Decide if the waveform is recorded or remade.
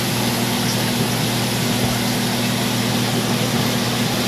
recorded